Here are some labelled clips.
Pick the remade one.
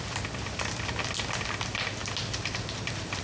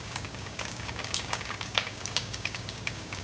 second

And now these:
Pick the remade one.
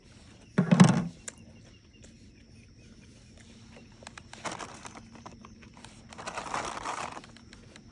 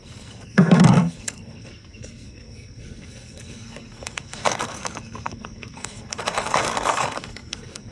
second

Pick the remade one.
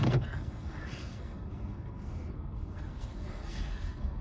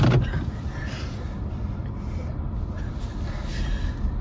first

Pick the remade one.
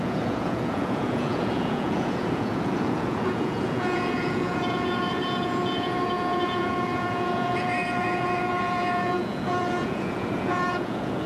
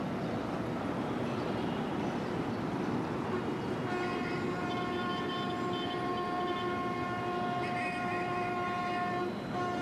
first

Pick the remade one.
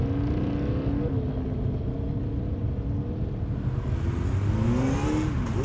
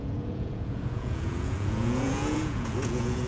second